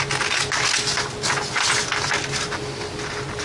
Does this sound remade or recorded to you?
recorded